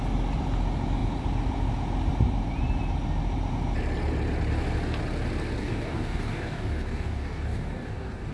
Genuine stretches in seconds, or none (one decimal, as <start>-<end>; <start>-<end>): 0.0-5.6